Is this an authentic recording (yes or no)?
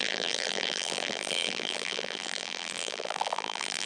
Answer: no